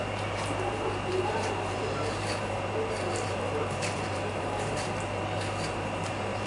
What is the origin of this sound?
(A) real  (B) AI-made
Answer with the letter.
B